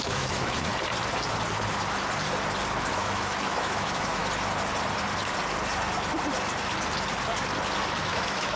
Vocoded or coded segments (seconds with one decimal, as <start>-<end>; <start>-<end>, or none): 0.0-0.7; 2.9-4.2; 8.0-8.6